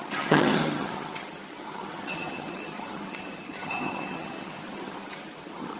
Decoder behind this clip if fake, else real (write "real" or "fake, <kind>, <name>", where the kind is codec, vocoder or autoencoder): fake, vocoder, HiFi-GAN